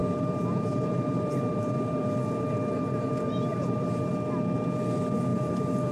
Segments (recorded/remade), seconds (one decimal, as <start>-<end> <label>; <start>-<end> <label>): 0.0-3.1 remade; 3.1-3.5 recorded; 3.5-4.1 remade; 4.1-5.3 recorded; 5.3-5.9 remade